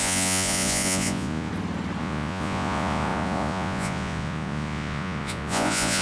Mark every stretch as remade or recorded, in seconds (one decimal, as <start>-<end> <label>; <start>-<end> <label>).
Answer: 0.0-1.5 remade; 1.5-2.0 recorded; 2.0-6.0 remade